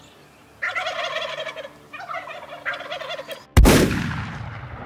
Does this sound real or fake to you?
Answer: real